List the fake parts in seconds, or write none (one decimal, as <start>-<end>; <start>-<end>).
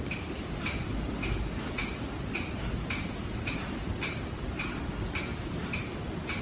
none